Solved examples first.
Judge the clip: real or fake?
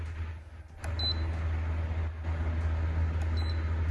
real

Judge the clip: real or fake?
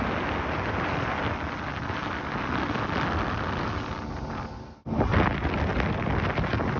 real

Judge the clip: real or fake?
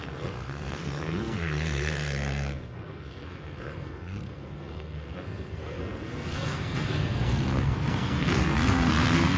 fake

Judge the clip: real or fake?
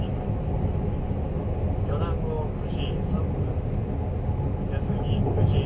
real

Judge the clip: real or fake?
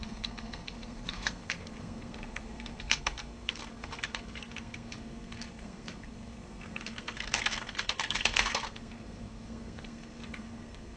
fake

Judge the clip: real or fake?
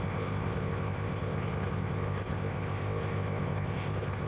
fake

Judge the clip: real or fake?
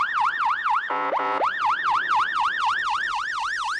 fake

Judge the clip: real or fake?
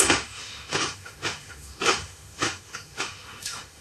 fake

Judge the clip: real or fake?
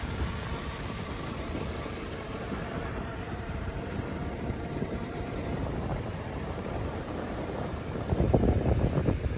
fake